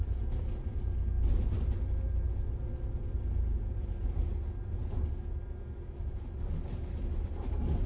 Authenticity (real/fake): real